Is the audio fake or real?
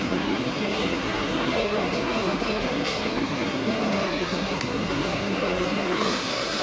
fake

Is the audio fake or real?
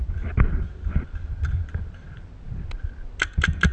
real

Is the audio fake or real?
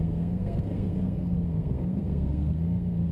fake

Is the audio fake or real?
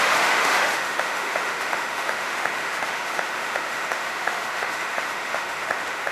fake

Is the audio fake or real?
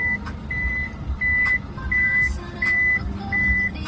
fake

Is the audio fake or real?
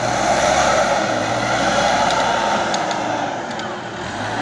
fake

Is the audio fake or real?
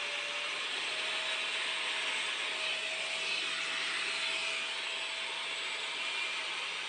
real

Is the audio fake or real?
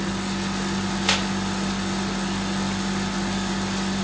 real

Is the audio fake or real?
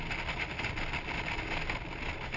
real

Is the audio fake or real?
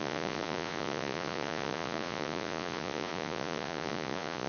fake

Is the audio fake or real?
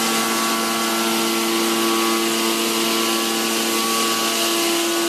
real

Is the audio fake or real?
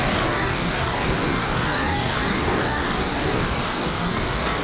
fake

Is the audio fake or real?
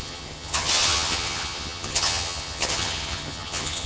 fake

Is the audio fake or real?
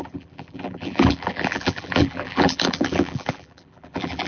fake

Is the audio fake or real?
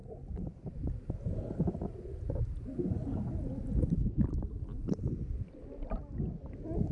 real